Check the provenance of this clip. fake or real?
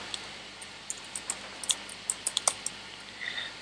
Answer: real